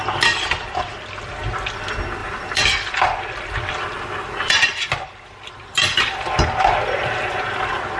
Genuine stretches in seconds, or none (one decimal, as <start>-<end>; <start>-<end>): 0.0-2.2; 6.2-8.0